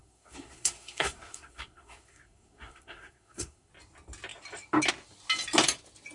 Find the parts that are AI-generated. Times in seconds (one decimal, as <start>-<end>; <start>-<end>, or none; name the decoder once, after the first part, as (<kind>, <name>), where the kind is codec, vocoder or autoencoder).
0.0-3.7 (codec, SNAC)